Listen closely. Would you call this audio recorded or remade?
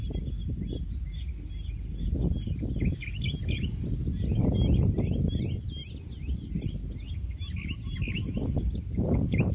recorded